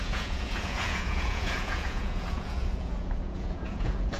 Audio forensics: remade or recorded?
remade